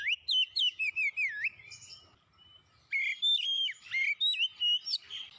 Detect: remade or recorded recorded